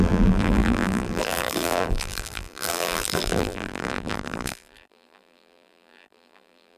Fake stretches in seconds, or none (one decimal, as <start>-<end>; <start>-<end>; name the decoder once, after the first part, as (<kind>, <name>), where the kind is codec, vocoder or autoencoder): 0.0-6.8 (vocoder, BigVGAN v2)